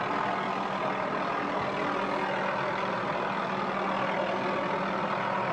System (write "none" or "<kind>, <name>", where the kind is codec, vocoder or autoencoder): none